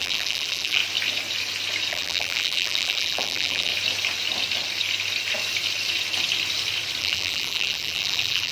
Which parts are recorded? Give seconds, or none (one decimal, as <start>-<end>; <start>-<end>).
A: 0.8-1.9; 3.7-7.0